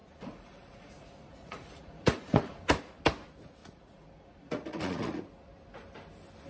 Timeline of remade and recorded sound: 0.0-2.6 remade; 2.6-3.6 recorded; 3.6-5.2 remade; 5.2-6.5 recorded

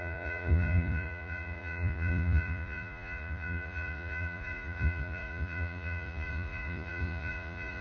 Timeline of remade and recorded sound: 0.0-7.8 remade

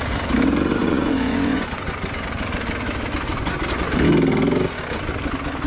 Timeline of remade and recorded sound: 0.0-0.8 recorded; 0.8-2.0 remade; 2.0-5.7 recorded

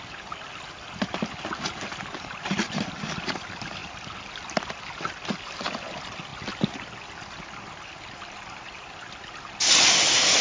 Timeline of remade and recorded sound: 0.0-10.4 recorded

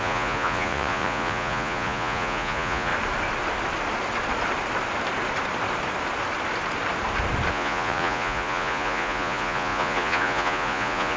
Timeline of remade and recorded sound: 0.0-2.9 remade; 2.9-7.5 recorded; 7.5-11.2 remade

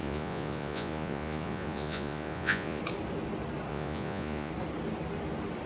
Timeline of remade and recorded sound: 0.0-2.8 remade; 2.8-3.7 recorded; 3.7-4.5 remade; 4.5-5.7 recorded

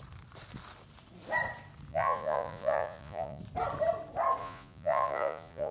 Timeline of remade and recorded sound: 0.0-1.9 recorded; 1.9-3.4 remade; 3.4-4.4 recorded; 4.4-5.7 remade

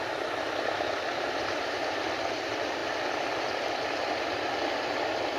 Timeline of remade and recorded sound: 0.0-5.4 recorded